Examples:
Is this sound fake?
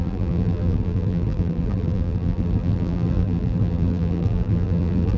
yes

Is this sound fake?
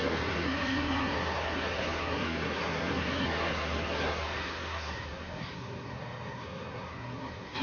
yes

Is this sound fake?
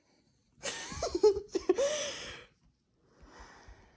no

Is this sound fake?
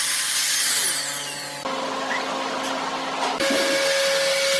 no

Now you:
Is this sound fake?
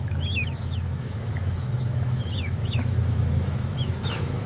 yes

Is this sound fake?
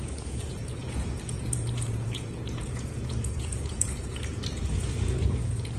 yes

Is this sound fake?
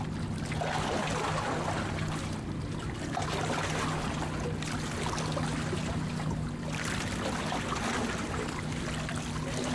no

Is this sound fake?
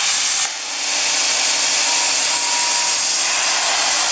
no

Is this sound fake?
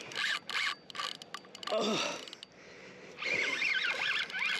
no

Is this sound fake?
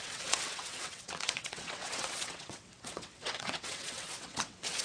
yes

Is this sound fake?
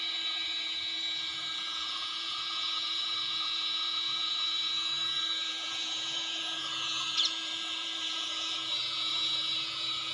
yes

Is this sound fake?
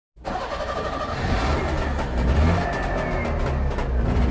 no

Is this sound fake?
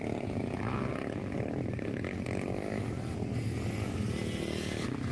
no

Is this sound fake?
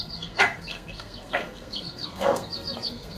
yes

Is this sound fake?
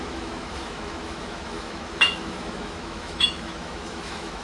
yes